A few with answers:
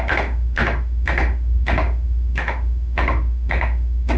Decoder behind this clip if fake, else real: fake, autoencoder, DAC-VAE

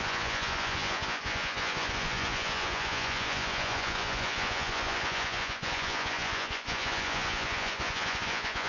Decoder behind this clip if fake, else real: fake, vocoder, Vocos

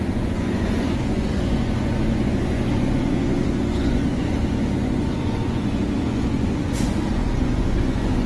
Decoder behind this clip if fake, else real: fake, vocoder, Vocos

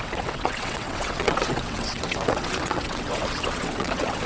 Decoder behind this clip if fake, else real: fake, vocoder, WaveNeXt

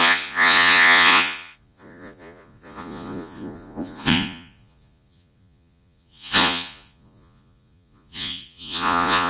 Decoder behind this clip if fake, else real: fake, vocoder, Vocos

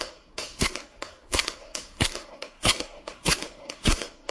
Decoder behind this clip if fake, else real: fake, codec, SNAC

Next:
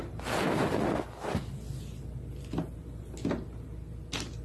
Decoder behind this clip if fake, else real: real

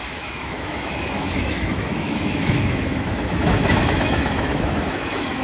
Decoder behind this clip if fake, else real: fake, autoencoder, DAC-VAE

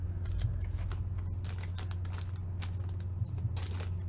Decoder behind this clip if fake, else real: real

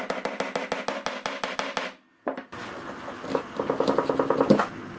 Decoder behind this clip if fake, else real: real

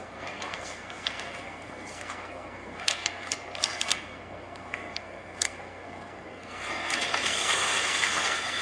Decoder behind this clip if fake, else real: fake, codec, SNAC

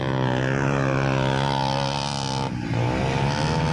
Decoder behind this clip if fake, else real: real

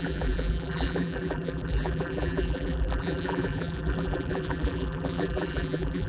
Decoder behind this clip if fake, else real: fake, vocoder, BigVGAN v2